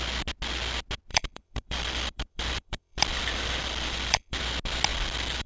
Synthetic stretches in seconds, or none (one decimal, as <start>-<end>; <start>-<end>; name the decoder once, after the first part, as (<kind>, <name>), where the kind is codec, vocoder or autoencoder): 1.1-4.4 (vocoder, BigVGAN v2); 4.9-5.5